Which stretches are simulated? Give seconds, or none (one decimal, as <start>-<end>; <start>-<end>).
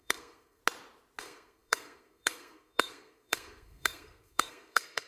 0.0-0.6; 1.2-5.1